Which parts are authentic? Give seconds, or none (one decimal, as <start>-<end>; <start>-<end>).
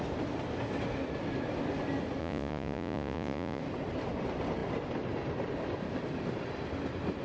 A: 0.0-2.2; 3.6-7.2